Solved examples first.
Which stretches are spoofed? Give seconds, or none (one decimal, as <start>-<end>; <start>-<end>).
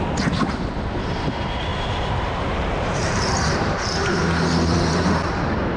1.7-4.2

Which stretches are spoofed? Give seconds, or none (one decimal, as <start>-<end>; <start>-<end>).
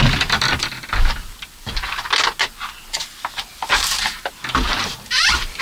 3.5-4.3; 4.7-5.6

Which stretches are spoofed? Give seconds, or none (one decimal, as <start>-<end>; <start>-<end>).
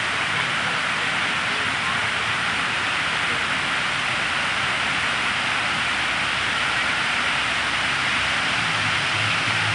2.0-3.1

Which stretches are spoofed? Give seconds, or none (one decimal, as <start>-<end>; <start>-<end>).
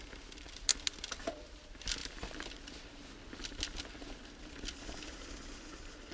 none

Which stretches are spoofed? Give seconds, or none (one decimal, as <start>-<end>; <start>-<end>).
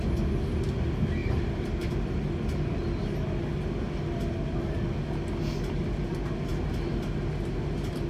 1.2-1.9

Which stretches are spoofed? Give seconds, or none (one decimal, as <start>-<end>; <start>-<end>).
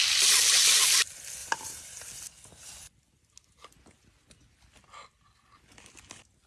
1.4-2.1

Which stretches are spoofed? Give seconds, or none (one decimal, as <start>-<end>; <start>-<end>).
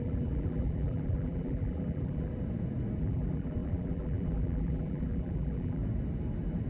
0.0-2.3; 3.0-5.8